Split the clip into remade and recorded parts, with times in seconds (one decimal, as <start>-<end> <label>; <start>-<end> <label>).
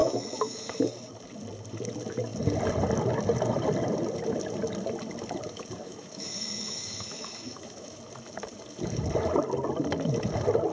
0.0-0.8 remade; 0.8-5.8 recorded; 5.8-8.0 remade; 8.0-10.7 recorded